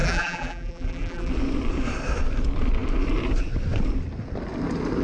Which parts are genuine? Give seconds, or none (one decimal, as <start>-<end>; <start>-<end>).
1.3-5.0

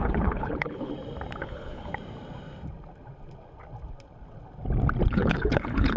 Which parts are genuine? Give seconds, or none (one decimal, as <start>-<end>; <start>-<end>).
0.9-1.4; 1.9-5.1

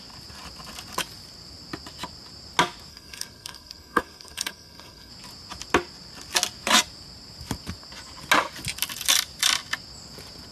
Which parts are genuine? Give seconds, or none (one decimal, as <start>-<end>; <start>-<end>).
0.0-2.9; 5.1-10.5

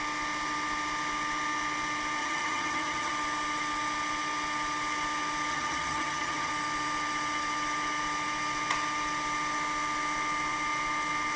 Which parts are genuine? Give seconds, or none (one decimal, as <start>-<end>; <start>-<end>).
0.0-2.2; 3.1-5.5; 6.5-11.4

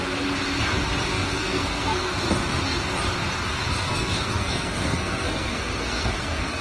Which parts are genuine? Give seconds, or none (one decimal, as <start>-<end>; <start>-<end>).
0.0-1.1; 2.1-3.7

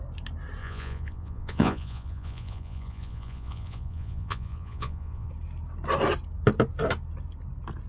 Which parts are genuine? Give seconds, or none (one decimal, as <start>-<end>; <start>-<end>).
0.0-0.6; 5.3-7.9

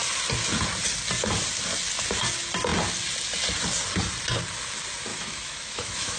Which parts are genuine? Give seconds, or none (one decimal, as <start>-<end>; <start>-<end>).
0.0-5.1

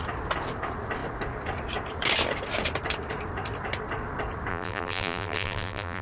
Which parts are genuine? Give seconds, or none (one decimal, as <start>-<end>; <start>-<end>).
0.0-4.5